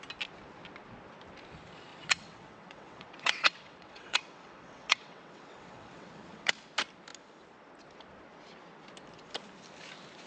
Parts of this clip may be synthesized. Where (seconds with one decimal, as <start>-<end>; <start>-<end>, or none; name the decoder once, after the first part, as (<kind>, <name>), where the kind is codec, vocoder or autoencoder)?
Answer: 1.9-6.5 (vocoder, WaveNeXt)